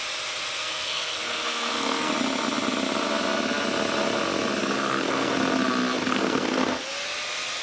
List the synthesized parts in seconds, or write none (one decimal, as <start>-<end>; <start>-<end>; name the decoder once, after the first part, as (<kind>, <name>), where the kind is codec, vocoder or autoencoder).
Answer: 0.6-2.1 (codec, SNAC); 4.6-5.3; 6.1-6.8